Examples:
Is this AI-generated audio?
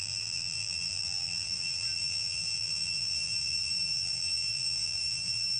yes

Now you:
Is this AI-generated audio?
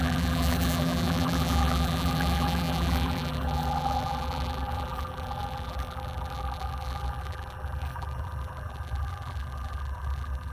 yes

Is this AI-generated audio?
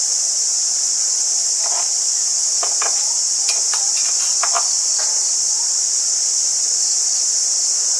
yes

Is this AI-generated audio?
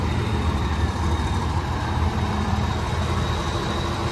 yes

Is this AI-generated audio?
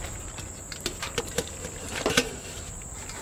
no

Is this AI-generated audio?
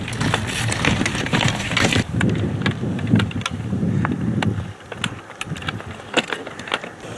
no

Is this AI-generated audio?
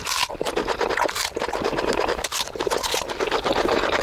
no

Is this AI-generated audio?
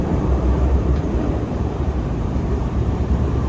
yes